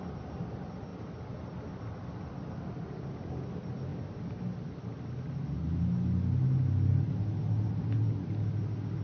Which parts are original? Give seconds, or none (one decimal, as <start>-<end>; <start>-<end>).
0.0-0.9; 2.3-9.0